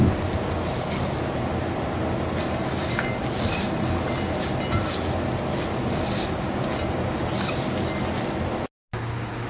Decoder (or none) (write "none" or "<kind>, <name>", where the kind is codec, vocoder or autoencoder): none